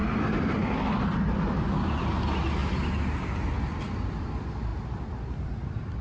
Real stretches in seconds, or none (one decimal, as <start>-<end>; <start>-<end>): 0.0-6.0